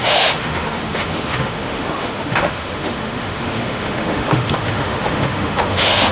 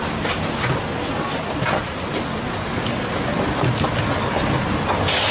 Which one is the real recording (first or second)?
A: second